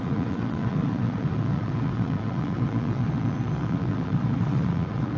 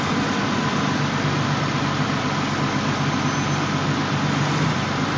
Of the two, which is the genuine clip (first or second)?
second